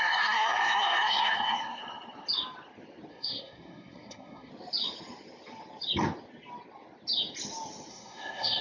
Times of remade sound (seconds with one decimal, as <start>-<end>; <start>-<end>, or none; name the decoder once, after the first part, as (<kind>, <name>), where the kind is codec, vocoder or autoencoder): 0.0-1.8 (codec, SNAC); 3.1-4.5; 7.9-8.6